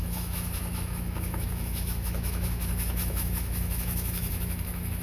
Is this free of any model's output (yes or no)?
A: no